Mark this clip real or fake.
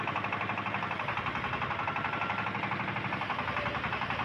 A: real